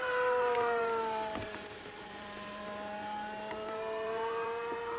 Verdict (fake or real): fake